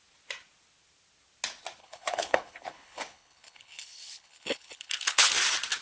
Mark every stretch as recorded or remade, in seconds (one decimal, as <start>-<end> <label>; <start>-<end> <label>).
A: 0.0-1.8 recorded; 1.8-5.3 remade; 5.3-5.8 recorded

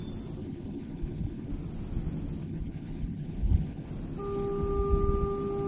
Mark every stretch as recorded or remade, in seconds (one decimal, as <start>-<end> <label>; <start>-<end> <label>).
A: 0.0-0.4 recorded; 0.4-1.5 remade; 1.5-2.4 recorded; 2.4-3.9 remade; 3.9-5.7 recorded